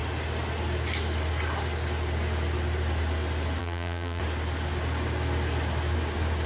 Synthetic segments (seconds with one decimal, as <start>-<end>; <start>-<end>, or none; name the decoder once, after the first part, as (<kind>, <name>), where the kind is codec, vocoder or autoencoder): 3.6-4.2 (vocoder, BigVGAN v2)